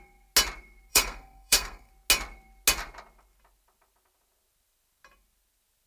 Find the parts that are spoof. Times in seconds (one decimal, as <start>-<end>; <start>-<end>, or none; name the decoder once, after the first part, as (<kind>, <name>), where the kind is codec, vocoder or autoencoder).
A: 0.9-1.9 (codec, SNAC)